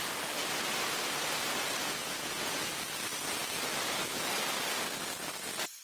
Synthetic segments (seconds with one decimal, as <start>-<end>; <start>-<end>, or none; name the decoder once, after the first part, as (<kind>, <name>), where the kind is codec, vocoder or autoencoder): 2.0-2.6 (vocoder, Vocos)